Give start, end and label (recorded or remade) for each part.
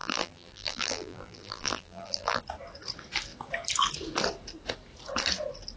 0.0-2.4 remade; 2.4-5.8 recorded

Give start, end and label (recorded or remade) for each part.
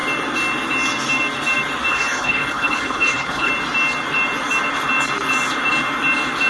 0.0-1.9 recorded; 1.9-3.5 remade; 3.5-6.5 recorded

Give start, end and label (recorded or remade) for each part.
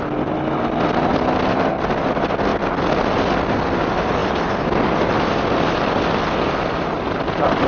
0.0-7.7 recorded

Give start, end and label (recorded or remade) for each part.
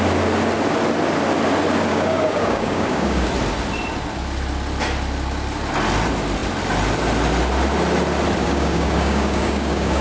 0.0-1.9 recorded; 1.9-3.3 remade; 3.3-8.4 recorded; 8.4-10.0 remade